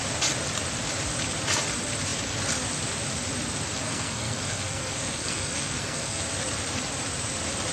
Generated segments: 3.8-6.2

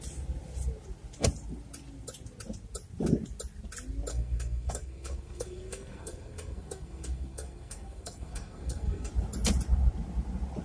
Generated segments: 4.1-9.1

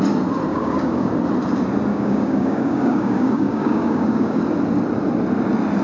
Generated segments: 0.5-1.1; 1.9-4.4

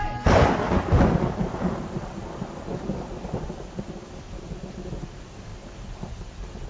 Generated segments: none

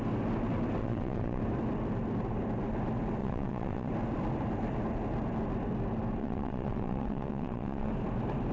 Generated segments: 0.8-1.4; 3.2-3.9; 6.2-7.9

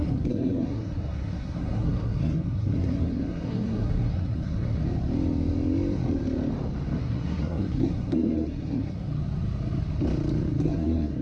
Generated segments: 0.0-4.8; 7.0-9.1; 10.6-11.2

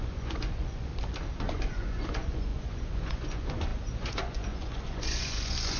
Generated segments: 0.0-0.9; 1.4-5.8

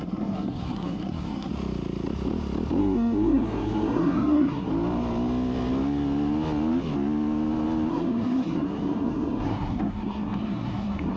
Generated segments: 0.0-1.5; 2.8-4.7; 7.9-11.2